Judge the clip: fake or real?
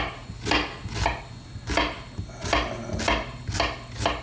real